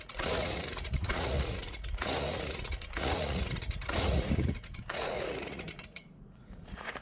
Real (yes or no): no